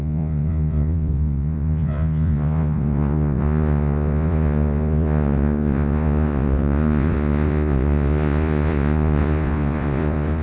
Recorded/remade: remade